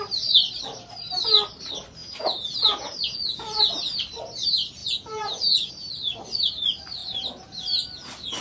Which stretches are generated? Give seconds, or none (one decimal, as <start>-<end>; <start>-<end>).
2.0-3.6; 4.8-5.7